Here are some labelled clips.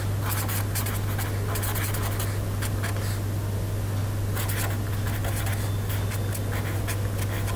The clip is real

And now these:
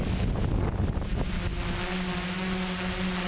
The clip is real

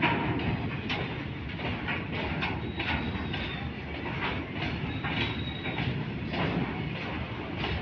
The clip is real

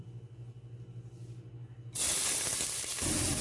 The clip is real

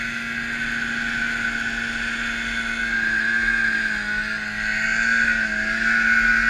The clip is real